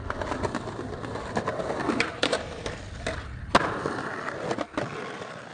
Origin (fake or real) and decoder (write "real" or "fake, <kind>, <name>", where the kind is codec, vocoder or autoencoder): real